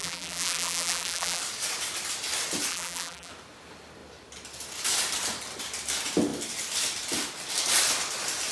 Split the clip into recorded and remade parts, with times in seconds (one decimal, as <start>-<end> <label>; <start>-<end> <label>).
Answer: 0.0-1.4 remade; 1.4-2.7 recorded; 2.7-3.3 remade; 3.3-8.5 recorded